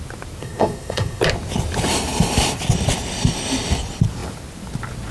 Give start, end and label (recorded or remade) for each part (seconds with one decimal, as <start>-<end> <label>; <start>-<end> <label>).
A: 0.0-0.4 recorded; 0.4-1.2 remade; 1.2-5.1 recorded